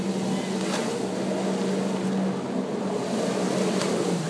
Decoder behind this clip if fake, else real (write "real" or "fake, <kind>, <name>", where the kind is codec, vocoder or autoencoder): real